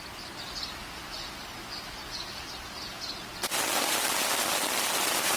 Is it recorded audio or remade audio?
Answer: recorded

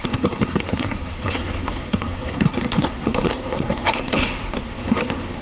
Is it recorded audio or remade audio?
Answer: remade